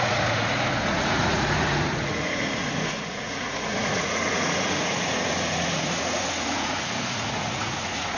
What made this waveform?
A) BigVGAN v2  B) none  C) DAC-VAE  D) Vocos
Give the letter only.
D